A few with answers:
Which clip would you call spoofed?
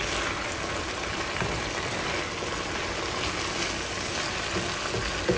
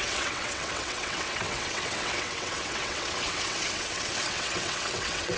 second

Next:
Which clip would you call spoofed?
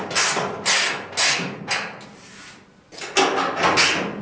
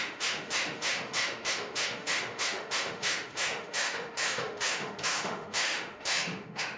second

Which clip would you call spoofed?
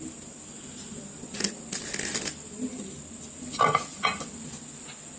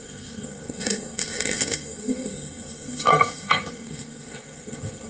second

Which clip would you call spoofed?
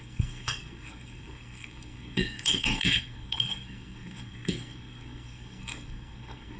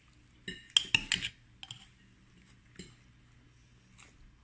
first